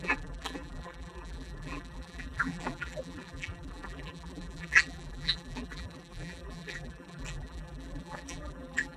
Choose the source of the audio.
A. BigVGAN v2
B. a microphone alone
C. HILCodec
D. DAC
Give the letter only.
A